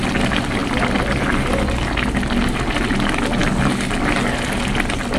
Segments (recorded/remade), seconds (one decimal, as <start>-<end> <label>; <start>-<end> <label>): 0.0-5.2 recorded